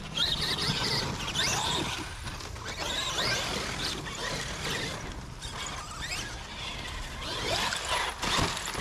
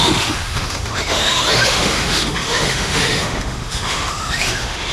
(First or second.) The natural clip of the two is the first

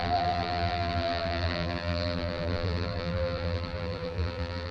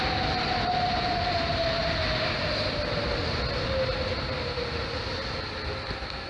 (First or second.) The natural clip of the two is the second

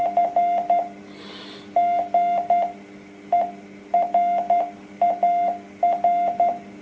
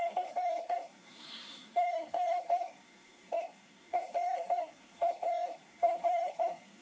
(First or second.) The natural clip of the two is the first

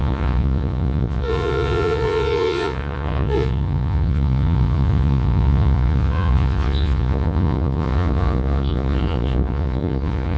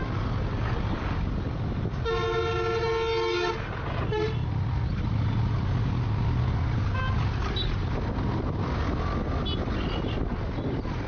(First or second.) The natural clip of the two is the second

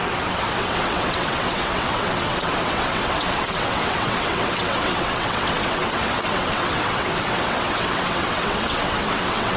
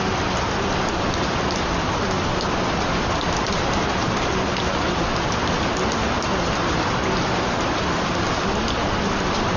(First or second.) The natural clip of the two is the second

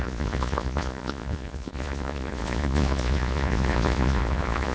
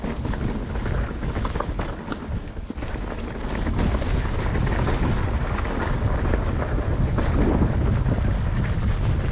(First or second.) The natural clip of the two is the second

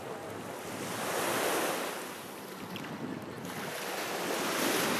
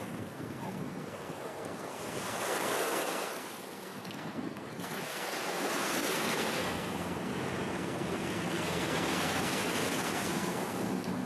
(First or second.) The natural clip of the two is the first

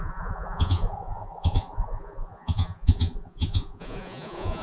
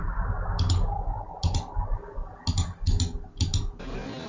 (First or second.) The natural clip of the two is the second